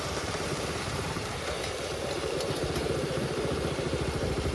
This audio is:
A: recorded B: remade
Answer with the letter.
B